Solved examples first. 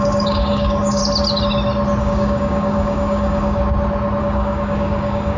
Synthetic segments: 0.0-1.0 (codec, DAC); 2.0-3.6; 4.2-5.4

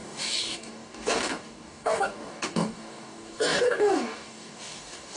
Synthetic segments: 0.0-5.2 (codec, DAC)

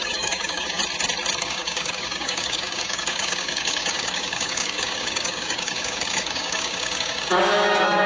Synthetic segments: 0.0-0.8 (codec, DAC); 1.4-8.1

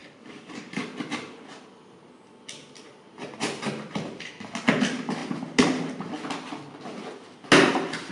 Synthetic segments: 0.0-0.8 (codec, DAC)

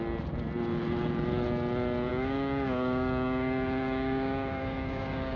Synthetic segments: 2.1-5.4 (codec, DAC)

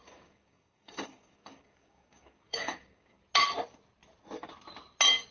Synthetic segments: 0.0-3.2 (codec, DAC)

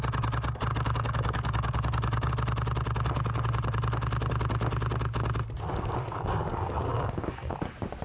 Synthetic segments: 0.7-2.3 (codec, DAC); 6.5-7.5